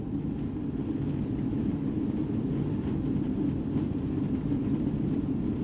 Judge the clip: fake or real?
real